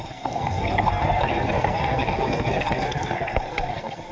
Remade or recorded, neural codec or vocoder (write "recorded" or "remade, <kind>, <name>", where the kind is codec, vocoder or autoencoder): remade, codec, SNAC